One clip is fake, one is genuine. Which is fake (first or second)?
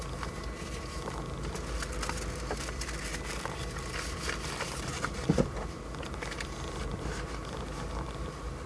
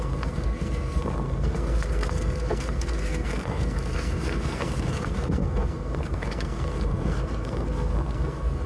second